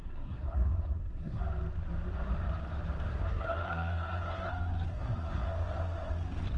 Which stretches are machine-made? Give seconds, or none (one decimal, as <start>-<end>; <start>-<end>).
0.0-1.4; 3.1-4.5; 4.9-5.5